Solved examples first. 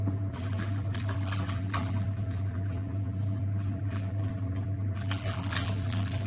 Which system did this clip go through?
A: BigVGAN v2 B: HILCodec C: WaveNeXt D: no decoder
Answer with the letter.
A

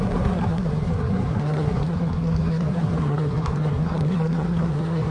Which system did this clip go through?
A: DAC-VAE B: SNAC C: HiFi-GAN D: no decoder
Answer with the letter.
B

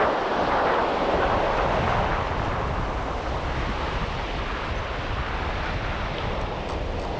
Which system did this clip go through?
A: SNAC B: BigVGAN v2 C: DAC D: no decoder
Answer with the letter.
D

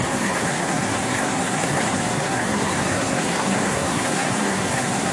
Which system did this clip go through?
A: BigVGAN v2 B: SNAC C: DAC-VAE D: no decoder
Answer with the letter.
B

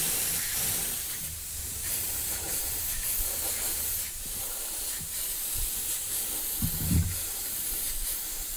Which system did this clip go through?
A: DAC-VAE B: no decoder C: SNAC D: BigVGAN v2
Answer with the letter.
D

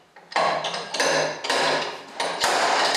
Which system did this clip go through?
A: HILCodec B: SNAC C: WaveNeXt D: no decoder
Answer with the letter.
D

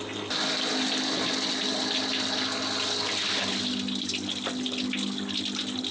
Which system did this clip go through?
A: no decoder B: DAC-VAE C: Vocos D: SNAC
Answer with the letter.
A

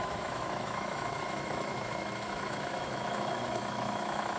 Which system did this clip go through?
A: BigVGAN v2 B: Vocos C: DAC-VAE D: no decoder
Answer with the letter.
C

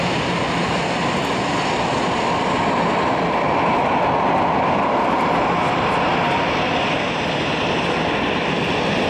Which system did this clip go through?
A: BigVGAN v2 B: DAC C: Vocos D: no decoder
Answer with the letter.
D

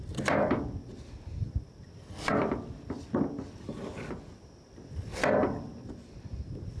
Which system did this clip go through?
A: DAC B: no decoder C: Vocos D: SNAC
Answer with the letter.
B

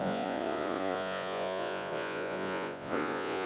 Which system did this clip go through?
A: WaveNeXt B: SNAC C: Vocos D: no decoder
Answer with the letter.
C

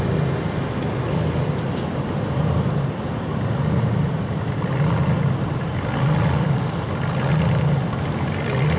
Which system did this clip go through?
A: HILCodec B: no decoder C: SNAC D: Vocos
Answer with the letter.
B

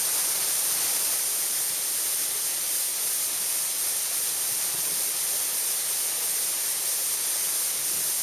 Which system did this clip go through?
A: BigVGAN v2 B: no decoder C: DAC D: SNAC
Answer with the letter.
B